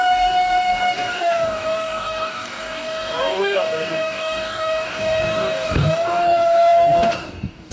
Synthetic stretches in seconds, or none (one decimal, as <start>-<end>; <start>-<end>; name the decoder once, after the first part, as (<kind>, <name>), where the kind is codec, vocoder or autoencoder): 0.0-7.7 (codec, DAC)